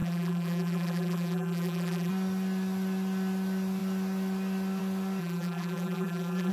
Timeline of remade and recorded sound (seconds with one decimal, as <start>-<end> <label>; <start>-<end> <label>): 0.0-2.1 remade; 2.1-5.2 recorded; 5.2-6.5 remade